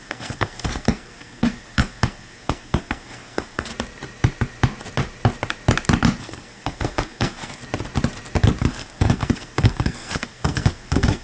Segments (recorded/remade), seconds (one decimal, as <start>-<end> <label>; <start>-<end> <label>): 0.0-3.7 remade; 3.7-6.2 recorded; 6.2-7.6 remade; 7.6-8.6 recorded; 8.6-11.2 remade